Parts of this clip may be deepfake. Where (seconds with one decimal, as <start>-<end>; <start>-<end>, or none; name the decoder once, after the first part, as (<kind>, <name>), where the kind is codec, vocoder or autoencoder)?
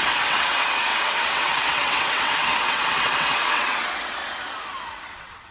0.0-4.2 (vocoder, WaveNeXt); 5.0-5.5